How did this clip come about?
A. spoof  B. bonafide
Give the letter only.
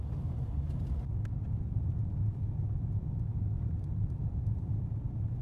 B